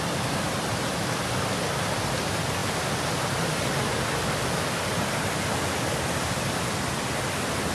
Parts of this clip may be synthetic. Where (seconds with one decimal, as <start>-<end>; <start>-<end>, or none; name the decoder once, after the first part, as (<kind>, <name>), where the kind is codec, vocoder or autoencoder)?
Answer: none